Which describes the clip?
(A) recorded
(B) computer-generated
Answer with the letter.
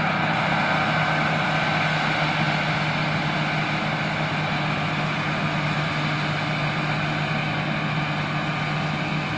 A